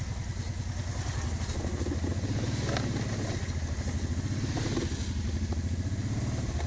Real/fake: real